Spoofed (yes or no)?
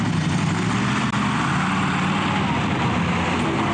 no